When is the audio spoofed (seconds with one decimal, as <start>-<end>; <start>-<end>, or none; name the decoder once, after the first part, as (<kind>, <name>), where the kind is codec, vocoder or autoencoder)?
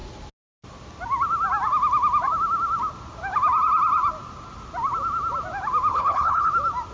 5.9-6.5 (codec, HILCodec)